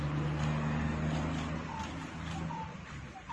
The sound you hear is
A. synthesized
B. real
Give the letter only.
B